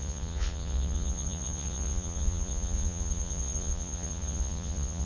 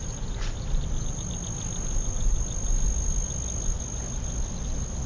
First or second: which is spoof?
first